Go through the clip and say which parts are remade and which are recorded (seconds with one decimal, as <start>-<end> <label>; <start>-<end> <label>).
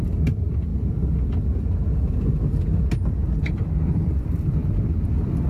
0.0-0.7 remade; 0.7-3.1 recorded; 3.1-5.5 remade